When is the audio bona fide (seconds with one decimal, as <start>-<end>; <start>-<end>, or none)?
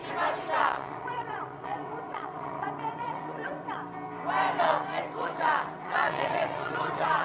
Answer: 0.0-0.6; 3.8-4.6